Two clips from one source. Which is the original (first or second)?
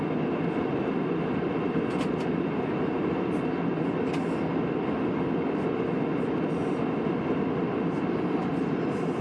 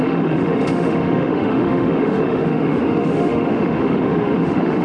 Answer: first